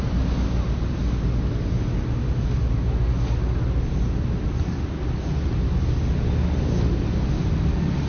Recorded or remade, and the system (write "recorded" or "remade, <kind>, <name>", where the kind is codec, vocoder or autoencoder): recorded